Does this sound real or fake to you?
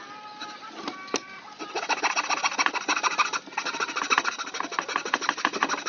real